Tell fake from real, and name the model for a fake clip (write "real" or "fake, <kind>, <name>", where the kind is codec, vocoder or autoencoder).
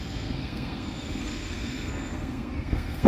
fake, codec, SNAC